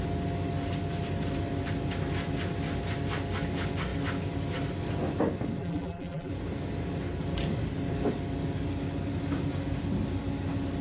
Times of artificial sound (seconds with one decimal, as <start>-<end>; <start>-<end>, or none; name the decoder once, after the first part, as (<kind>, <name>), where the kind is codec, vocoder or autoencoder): 5.6-6.3 (vocoder, BigVGAN v2)